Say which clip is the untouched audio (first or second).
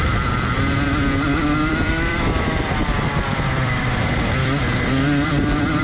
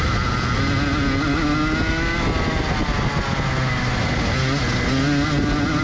second